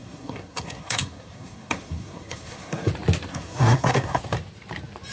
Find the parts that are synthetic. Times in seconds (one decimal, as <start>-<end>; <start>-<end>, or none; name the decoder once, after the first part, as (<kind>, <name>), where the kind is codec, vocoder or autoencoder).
0.0-2.9 (codec, SNAC); 3.3-4.2